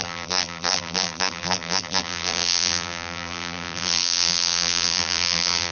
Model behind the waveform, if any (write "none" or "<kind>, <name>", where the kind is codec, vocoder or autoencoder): vocoder, BigVGAN v2